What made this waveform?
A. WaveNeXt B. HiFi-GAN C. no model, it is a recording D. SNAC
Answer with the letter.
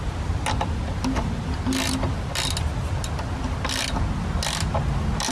C